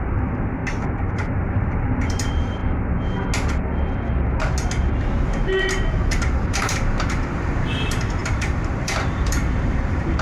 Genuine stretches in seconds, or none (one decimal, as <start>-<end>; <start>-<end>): 0.6-1.1; 2.6-6.4